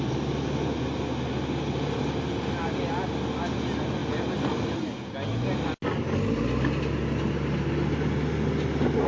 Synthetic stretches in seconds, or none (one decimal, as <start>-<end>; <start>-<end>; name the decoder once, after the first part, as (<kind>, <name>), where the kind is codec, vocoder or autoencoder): none